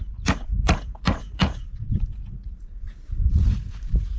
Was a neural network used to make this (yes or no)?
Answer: yes